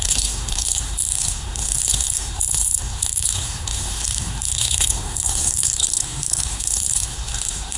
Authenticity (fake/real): fake